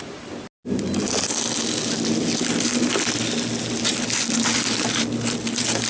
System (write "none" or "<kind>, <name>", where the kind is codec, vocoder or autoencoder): none